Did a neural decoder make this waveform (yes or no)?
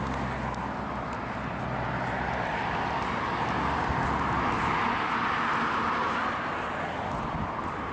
no